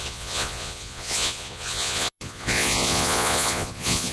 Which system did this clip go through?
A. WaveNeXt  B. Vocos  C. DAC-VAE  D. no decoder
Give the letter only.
B